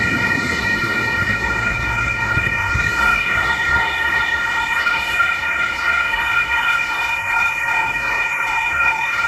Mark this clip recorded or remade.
remade